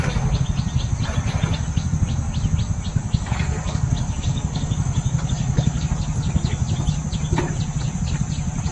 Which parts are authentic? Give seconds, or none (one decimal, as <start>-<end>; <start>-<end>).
0.0-3.0; 5.9-8.7